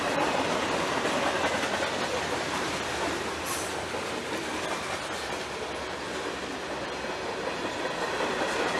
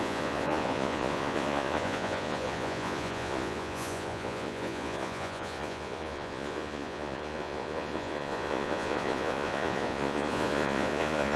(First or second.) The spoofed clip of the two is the second